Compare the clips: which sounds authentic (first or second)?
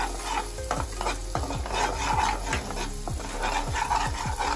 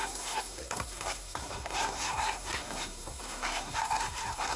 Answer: first